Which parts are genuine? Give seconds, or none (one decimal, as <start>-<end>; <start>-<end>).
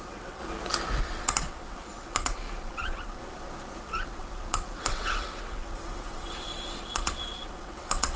0.4-1.0; 3.2-3.8